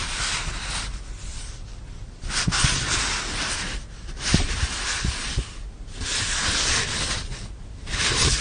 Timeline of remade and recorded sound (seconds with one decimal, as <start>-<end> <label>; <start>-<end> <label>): 0.0-8.4 recorded